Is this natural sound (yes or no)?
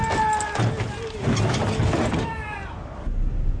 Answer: yes